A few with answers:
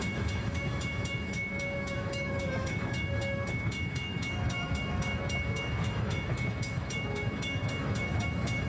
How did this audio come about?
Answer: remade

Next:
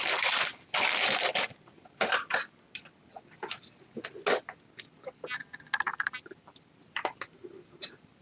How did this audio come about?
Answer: recorded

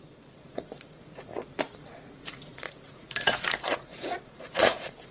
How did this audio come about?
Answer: remade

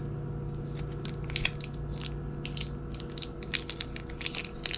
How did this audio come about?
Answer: recorded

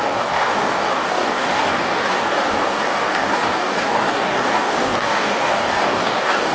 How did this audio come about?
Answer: remade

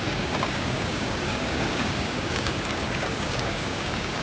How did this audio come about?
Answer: remade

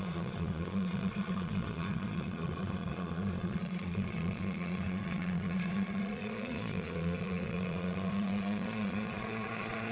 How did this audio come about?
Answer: remade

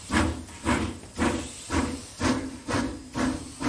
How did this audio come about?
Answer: recorded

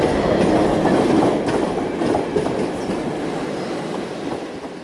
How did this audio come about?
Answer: recorded